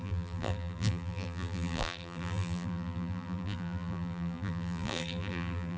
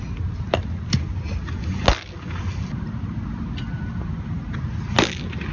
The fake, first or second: first